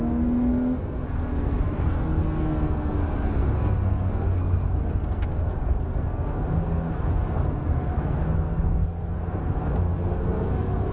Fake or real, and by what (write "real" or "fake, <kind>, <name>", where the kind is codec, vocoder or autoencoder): fake, codec, SNAC